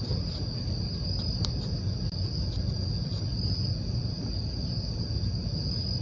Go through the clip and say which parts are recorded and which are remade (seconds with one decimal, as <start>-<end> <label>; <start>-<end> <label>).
0.0-6.0 recorded